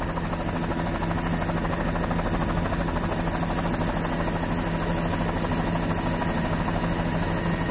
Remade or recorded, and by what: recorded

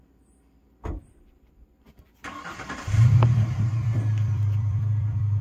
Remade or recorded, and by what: remade, vocoder, BigVGAN v2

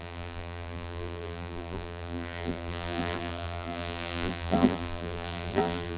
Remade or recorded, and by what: remade, vocoder, BigVGAN v2